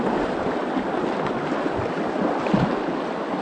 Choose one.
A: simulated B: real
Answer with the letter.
B